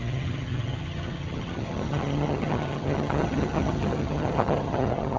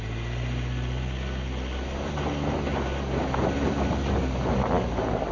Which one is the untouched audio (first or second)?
second